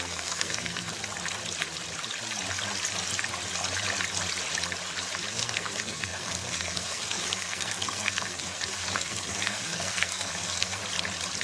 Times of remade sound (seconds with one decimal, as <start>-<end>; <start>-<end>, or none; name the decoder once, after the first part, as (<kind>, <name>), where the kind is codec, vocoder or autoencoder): 0.0-0.9 (codec, SNAC); 5.3-10.8